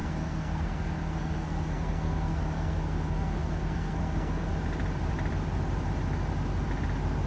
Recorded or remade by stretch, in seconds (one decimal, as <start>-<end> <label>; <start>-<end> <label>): 0.0-4.5 remade; 4.5-7.3 recorded